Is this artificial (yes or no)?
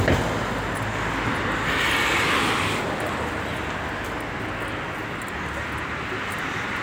no